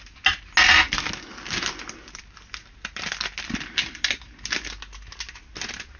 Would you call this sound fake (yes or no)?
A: no